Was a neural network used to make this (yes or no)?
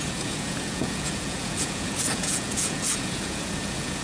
yes